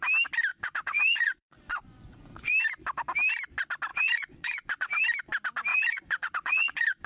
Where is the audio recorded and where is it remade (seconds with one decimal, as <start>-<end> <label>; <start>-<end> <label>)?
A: 0.0-0.5 recorded; 0.5-2.5 remade; 2.5-3.9 recorded; 3.9-5.0 remade; 5.0-5.7 recorded; 5.7-7.1 remade